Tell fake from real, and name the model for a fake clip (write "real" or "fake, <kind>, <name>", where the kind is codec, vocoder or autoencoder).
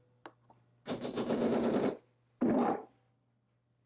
real